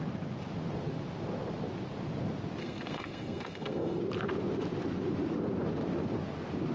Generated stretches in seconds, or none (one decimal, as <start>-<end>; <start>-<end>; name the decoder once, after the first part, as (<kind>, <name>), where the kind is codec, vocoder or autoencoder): 2.6-4.0 (codec, SNAC)